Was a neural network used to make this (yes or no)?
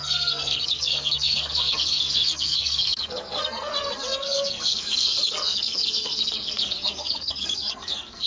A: yes